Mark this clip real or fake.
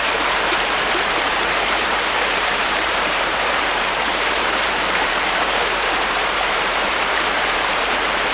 fake